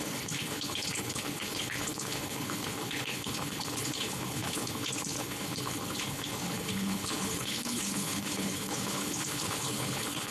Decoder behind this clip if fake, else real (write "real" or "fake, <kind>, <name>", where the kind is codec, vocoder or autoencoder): fake, codec, HILCodec